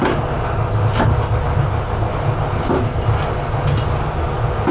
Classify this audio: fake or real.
real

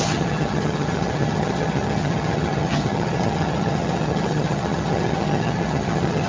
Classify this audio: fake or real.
fake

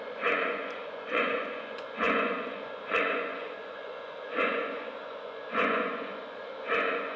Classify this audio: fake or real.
fake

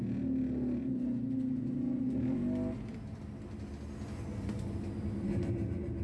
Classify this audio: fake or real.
real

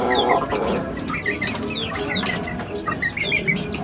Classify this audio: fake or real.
real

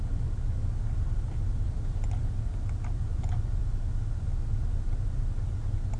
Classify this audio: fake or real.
real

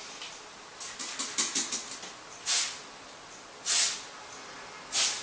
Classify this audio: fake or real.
real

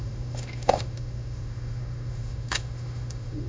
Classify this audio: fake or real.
fake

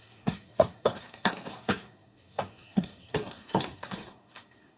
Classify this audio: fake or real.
fake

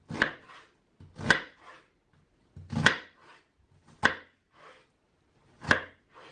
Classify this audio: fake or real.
real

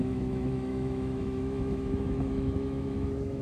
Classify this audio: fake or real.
fake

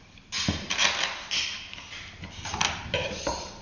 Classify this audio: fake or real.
real